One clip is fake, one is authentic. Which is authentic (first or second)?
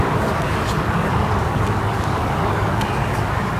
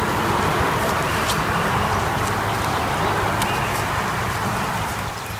second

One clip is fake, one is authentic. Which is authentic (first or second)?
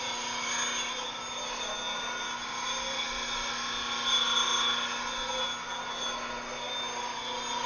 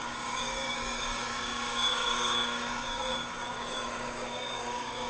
first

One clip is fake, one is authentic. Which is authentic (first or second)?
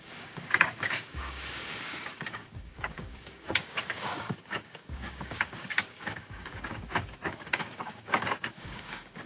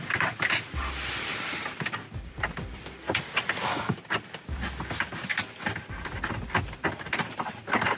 second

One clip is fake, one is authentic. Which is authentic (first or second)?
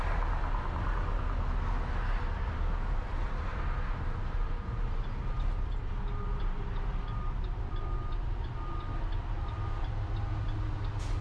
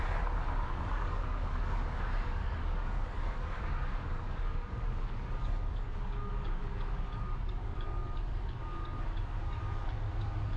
first